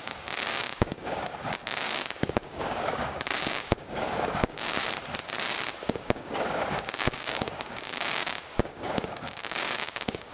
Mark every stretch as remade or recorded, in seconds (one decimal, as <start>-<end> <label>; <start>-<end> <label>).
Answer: 0.0-4.8 remade; 4.8-5.7 recorded; 5.7-10.3 remade